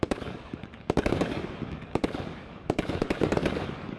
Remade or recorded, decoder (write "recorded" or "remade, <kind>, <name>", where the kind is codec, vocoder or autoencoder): remade, codec, DAC